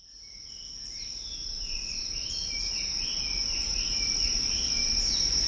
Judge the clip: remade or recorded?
remade